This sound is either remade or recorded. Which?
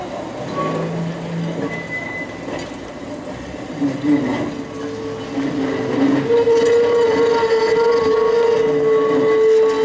recorded